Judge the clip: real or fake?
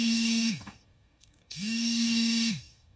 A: fake